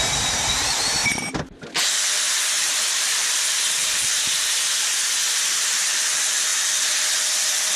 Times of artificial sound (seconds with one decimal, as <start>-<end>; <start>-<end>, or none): 0.0-1.0; 2.6-6.5